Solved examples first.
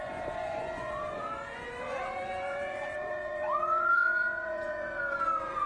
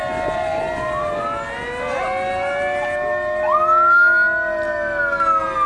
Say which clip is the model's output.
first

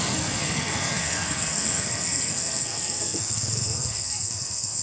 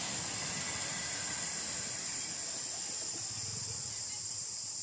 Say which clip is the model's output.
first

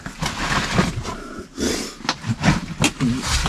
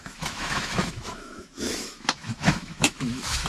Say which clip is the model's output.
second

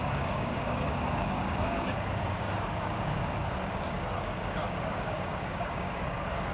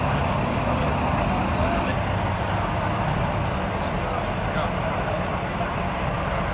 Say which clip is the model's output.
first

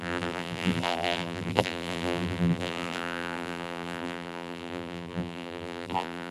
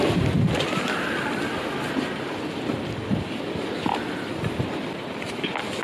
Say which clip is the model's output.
first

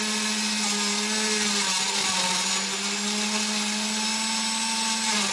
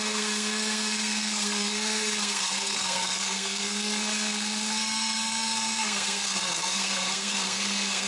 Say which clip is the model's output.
second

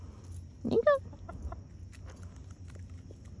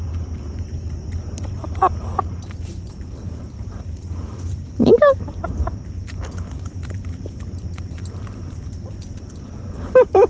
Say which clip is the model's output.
second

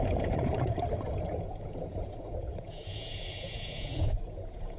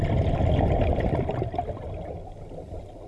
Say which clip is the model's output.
first